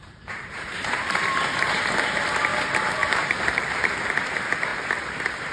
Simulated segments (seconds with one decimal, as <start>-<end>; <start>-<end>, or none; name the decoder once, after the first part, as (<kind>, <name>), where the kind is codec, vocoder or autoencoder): 0.0-1.6 (vocoder, BigVGAN v2); 2.5-3.9